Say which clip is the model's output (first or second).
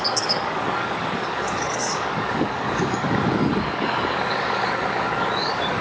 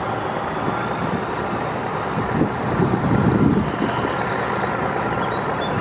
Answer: first